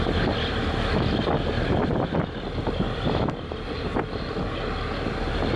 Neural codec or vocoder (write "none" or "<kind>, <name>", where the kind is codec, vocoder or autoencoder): none